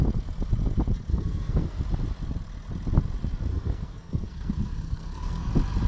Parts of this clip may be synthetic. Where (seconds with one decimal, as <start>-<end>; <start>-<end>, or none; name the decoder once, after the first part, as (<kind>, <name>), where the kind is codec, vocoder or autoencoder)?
1.1-1.8 (codec, SNAC); 3.5-5.5